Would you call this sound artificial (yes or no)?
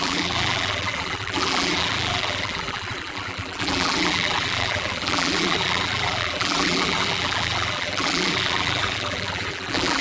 yes